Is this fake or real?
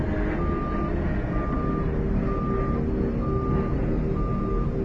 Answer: real